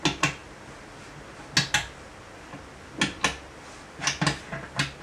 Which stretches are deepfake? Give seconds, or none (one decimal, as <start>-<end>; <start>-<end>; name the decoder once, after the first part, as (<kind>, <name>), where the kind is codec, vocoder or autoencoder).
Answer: none

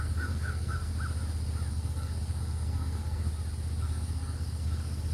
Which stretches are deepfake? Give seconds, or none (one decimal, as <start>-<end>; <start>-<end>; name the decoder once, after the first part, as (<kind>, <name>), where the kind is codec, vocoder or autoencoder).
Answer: 0.0-0.9 (codec, SNAC); 1.7-3.3; 3.8-5.1

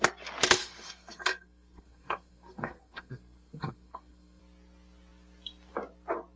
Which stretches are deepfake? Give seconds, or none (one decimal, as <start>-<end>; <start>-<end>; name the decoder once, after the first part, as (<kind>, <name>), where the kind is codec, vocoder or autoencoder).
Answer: 0.6-4.4 (codec, SNAC)

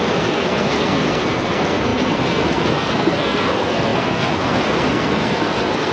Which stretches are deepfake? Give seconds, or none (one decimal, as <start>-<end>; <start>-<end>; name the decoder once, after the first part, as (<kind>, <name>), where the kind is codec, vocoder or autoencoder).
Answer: 0.0-5.9 (codec, SNAC)

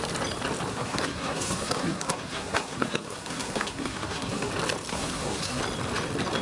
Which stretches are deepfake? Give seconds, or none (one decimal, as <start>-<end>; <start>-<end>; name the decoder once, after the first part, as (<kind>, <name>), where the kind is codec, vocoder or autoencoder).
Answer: 0.7-4.5 (codec, SNAC); 4.9-5.6

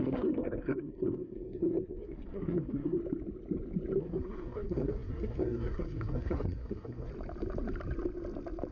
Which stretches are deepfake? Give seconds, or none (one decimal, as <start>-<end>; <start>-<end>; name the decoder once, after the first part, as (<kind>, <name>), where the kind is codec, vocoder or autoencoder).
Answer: 0.0-3.0 (codec, SNAC); 4.0-7.1

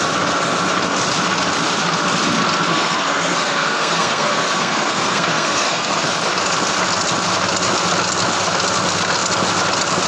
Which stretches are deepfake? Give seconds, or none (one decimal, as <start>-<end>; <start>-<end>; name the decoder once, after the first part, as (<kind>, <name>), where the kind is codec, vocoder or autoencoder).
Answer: 2.7-6.1 (codec, SNAC)